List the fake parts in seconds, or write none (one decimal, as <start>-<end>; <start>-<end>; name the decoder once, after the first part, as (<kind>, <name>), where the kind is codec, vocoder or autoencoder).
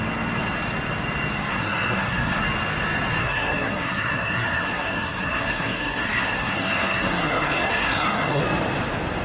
1.5-2.4 (codec, SNAC); 3.2-8.4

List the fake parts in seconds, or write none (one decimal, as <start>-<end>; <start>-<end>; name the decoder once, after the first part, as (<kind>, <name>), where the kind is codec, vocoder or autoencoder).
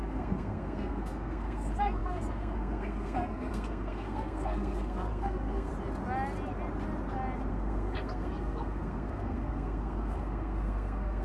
0.0-5.7 (codec, SNAC); 7.5-11.2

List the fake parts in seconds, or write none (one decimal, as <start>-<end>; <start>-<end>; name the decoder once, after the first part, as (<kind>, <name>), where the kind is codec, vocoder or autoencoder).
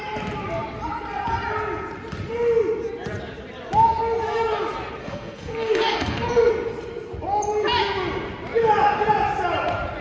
5.0-6.5 (codec, SNAC)